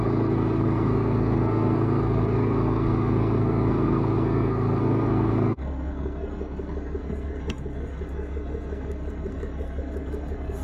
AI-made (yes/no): yes